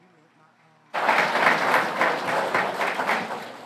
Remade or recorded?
recorded